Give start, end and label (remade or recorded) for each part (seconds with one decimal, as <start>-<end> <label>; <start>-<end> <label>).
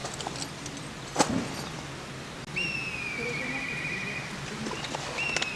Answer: 0.0-5.6 recorded